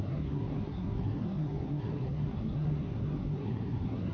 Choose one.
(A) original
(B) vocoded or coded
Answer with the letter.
B